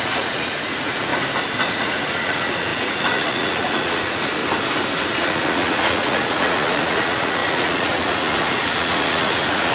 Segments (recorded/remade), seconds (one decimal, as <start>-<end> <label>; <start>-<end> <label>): 0.0-1.1 remade; 1.1-1.7 recorded; 1.7-4.4 remade; 4.4-5.2 recorded; 5.2-9.7 remade